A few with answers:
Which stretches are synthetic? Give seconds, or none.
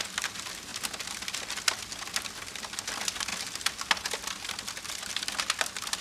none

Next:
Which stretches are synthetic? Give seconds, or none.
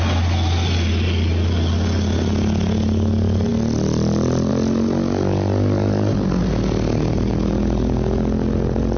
none